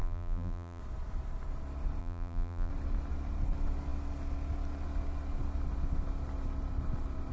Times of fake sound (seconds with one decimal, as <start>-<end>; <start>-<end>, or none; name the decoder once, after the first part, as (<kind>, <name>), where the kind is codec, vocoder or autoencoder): 0.0-0.8 (vocoder, BigVGAN v2); 2.0-2.7